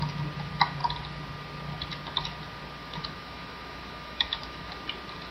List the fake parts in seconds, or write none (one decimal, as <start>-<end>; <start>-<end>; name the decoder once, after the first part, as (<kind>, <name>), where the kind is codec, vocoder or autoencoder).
2.8-4.7 (autoencoder, DAC-VAE)